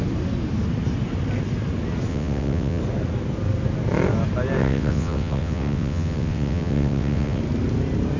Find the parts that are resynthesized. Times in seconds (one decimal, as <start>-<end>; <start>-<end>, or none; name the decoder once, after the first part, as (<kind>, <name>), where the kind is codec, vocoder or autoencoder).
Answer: 2.1-2.8 (vocoder, WaveNeXt); 4.6-7.4